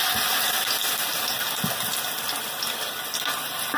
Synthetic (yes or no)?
no